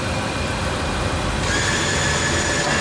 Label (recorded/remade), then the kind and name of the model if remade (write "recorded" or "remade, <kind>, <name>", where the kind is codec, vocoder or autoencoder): recorded